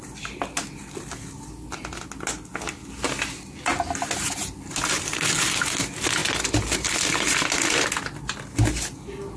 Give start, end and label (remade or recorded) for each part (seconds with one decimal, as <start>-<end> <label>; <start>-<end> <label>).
0.0-9.4 recorded